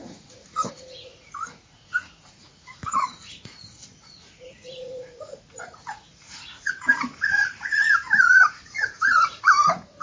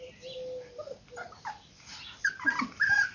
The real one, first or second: second